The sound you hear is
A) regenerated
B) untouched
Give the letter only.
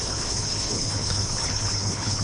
A